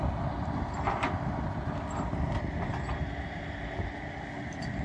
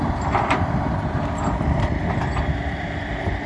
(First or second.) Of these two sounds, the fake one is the second